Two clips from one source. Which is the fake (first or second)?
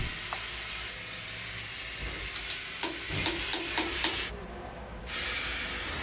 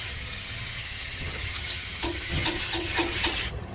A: second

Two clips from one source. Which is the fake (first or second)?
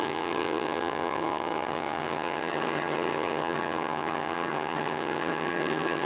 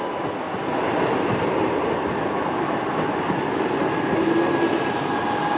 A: first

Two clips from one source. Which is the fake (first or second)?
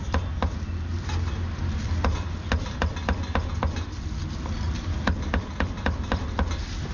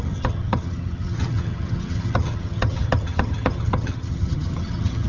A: second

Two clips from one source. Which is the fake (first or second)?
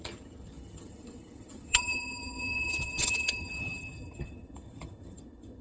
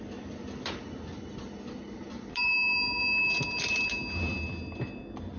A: first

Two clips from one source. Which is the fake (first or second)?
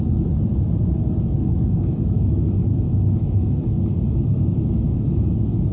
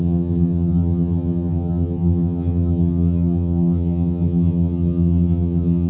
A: second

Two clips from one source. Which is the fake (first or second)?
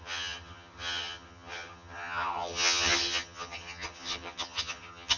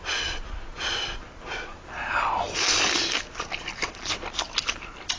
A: first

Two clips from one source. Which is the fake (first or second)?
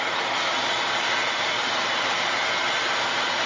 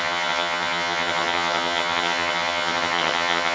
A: second